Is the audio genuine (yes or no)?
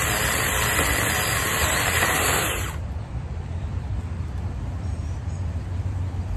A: no